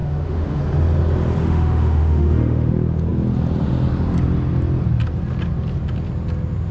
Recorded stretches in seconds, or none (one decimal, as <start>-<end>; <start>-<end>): 0.6-1.4; 2.7-6.7